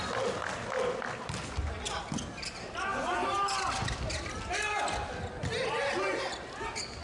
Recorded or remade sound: recorded